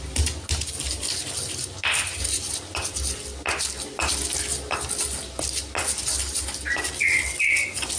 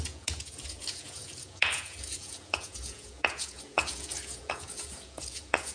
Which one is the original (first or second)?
first